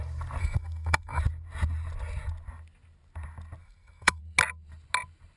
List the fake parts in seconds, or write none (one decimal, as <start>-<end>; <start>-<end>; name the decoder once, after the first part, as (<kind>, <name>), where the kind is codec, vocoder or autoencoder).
0.4-1.2 (codec, SNAC); 3.6-4.2